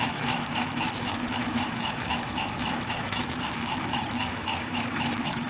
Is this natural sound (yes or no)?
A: no